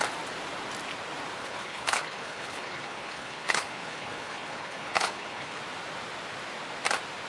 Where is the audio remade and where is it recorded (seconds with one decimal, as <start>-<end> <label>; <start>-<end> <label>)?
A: 0.0-1.4 recorded; 1.4-5.6 remade; 5.6-7.3 recorded

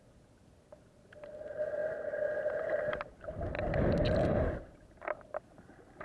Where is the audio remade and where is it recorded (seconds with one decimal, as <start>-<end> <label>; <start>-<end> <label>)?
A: 0.0-6.0 recorded